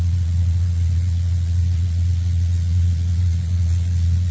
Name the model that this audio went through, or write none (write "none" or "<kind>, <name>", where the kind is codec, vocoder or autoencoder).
vocoder, Vocos